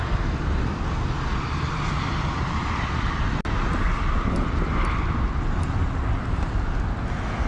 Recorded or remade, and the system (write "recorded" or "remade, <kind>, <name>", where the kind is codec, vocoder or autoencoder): recorded